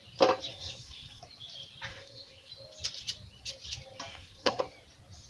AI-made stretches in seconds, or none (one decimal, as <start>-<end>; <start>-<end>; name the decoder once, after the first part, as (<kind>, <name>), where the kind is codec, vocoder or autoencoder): 0.5-1.2 (codec, SNAC); 1.9-2.5; 4.1-4.6